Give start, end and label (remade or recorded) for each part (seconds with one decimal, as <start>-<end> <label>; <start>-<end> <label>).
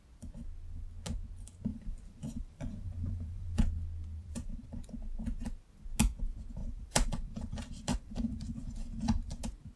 0.0-1.7 recorded; 1.7-3.6 remade; 3.6-4.2 recorded; 4.2-4.8 remade; 4.8-6.6 recorded; 6.6-9.4 remade; 9.4-9.8 recorded